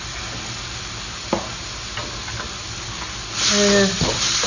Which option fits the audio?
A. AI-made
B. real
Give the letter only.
B